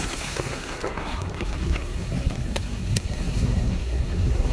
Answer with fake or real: fake